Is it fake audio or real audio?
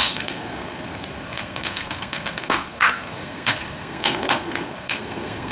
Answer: fake